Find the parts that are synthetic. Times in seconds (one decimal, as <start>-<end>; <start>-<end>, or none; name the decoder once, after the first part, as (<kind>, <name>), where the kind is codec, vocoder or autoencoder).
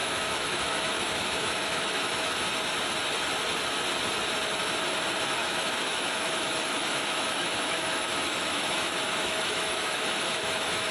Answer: 0.0-2.4 (autoencoder, DAC-VAE); 5.4-10.9